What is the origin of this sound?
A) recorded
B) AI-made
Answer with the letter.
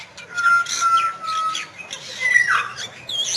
A